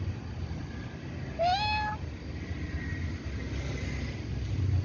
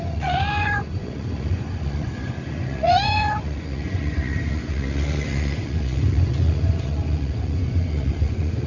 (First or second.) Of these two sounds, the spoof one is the second